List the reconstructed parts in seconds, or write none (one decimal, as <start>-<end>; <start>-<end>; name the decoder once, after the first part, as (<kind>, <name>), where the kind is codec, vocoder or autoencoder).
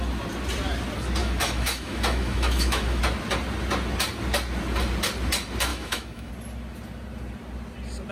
1.2-3.0 (autoencoder, DAC-VAE); 5.7-6.3